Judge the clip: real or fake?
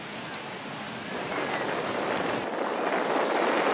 real